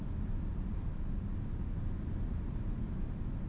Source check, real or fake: real